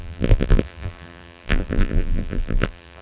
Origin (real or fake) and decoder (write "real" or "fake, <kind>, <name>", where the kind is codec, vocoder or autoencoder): fake, vocoder, BigVGAN v2